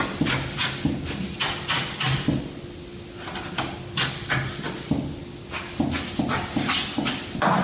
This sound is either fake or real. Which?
real